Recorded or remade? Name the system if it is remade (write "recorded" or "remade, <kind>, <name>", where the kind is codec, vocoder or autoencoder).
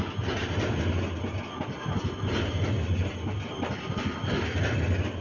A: recorded